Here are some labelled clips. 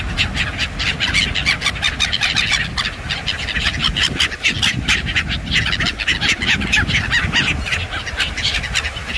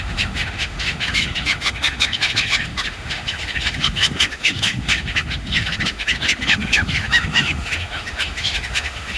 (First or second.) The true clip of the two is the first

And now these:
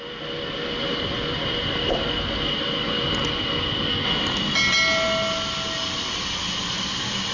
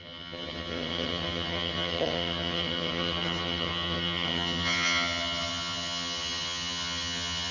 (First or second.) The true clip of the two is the first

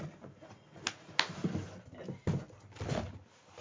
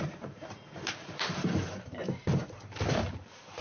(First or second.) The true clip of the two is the first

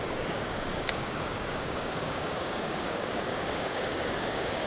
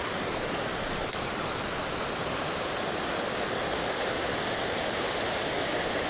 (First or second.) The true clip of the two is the second